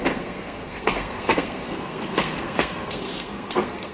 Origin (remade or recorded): remade